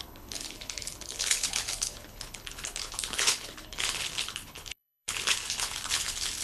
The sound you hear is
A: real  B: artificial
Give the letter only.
B